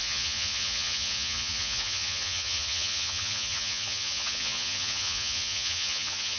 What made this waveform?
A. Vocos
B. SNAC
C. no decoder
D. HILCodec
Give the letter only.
A